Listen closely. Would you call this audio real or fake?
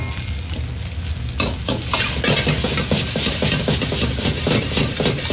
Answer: real